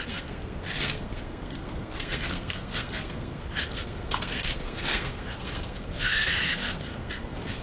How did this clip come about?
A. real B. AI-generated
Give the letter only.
B